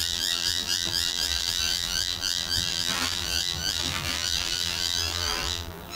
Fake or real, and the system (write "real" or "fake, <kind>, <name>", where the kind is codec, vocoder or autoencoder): fake, vocoder, BigVGAN v2